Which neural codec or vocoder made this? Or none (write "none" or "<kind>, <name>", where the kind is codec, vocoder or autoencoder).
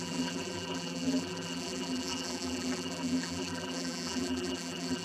vocoder, BigVGAN v2